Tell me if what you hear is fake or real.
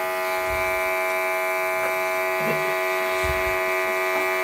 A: real